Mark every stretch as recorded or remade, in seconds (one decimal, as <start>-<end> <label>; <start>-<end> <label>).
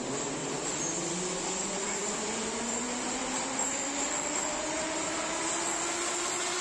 0.0-0.4 recorded; 0.4-0.9 remade; 0.9-6.6 recorded